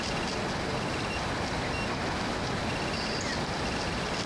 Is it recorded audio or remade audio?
recorded